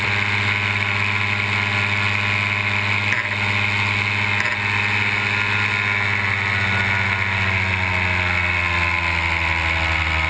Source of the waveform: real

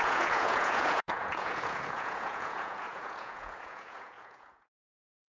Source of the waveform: fake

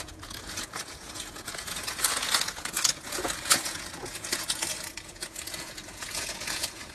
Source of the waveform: fake